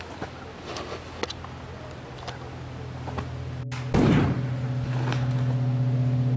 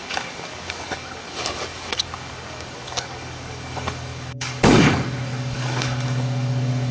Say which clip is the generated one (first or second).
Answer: second